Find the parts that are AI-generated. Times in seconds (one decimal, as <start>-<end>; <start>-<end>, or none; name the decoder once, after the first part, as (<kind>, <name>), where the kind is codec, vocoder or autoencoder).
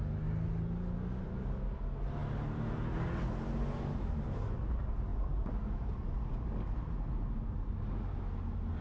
none